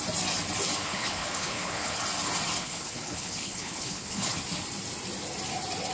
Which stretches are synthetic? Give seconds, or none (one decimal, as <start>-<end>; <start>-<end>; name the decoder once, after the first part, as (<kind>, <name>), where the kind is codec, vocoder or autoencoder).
0.8-2.0 (codec, HILCodec); 2.6-4.4